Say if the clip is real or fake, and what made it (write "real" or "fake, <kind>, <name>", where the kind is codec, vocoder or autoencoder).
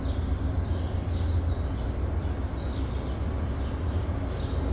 real